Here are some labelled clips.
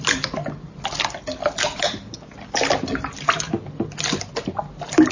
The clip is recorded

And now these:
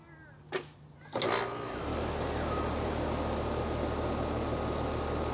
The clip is recorded